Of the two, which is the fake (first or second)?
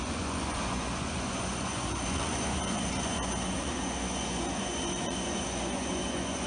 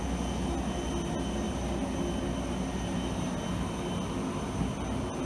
first